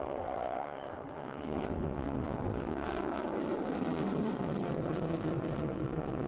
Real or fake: fake